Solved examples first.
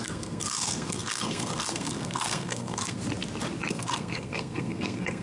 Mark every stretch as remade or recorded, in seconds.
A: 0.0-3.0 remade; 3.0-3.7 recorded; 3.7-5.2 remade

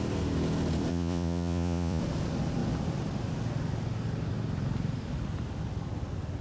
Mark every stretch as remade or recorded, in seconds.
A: 0.0-0.9 recorded; 0.9-2.0 remade; 2.0-6.4 recorded

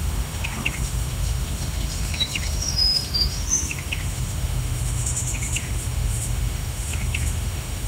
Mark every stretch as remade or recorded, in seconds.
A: 0.0-7.9 remade

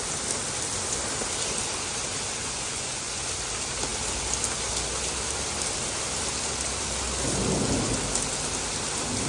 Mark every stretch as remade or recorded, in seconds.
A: 0.0-2.4 recorded; 2.4-3.2 remade; 3.2-9.3 recorded